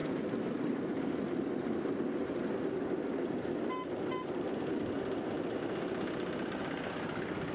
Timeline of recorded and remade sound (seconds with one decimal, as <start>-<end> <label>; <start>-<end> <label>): 0.0-7.5 recorded